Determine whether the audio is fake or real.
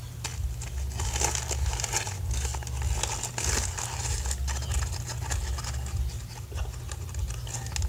real